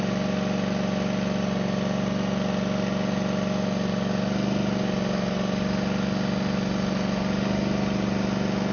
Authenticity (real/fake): real